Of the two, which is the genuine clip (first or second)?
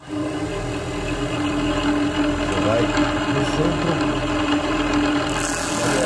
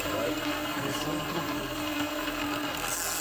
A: first